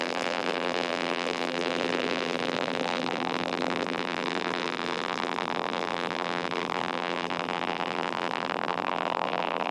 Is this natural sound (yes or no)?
no